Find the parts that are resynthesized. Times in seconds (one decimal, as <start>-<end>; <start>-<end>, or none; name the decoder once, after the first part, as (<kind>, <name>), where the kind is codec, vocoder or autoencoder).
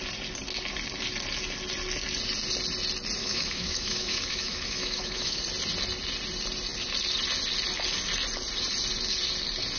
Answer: 3.2-5.4 (autoencoder, DAC-VAE)